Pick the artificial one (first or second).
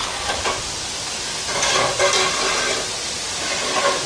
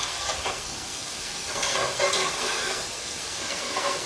second